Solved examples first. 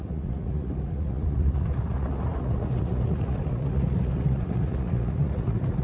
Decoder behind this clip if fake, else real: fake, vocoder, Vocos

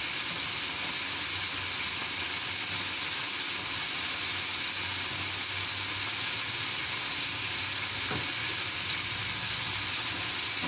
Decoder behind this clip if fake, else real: real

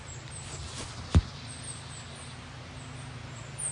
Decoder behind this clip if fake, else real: real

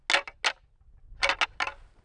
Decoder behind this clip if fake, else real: real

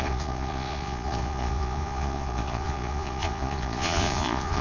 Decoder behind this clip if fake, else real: fake, vocoder, Vocos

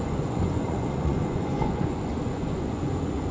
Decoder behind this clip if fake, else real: fake, vocoder, Vocos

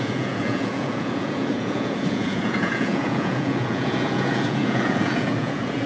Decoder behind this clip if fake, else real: fake, vocoder, Vocos